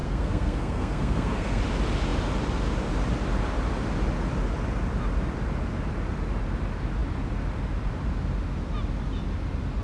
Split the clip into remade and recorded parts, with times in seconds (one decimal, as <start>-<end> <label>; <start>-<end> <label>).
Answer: 0.0-1.6 remade; 1.6-9.8 recorded